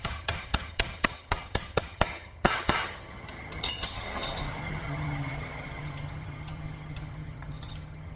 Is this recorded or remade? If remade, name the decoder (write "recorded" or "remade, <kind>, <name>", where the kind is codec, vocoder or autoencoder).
remade, vocoder, HiFi-GAN